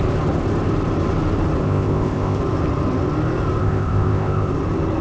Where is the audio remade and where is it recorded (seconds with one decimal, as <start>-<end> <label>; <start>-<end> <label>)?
0.0-1.6 recorded; 1.6-2.4 remade; 2.4-3.6 recorded; 3.6-4.5 remade; 4.5-5.0 recorded